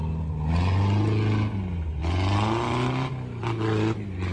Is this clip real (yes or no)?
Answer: yes